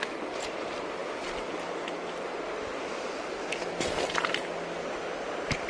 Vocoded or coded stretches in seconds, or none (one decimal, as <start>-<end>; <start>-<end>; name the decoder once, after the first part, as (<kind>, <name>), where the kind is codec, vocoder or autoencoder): none